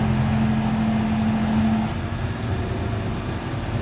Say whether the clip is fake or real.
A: real